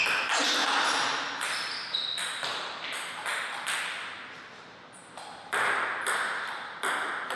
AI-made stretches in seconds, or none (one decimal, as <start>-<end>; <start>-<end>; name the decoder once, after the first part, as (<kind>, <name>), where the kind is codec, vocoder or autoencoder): none